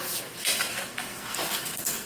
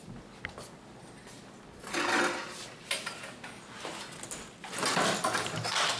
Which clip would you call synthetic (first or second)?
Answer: first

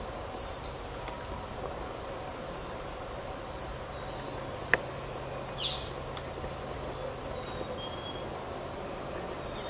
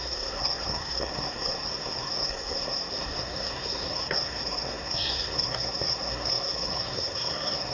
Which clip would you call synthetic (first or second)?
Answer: second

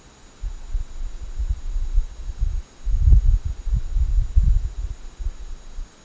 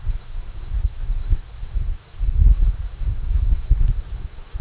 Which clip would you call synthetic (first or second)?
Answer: second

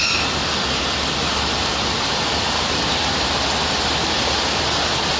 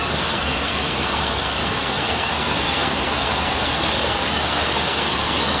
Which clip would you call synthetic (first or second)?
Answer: second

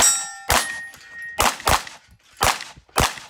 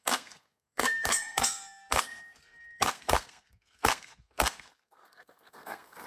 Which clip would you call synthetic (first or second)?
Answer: second